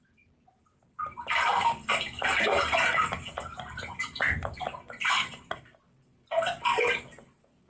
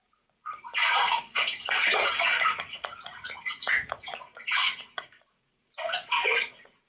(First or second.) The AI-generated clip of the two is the second